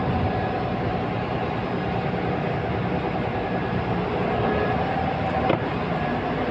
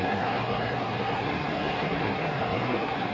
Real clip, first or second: first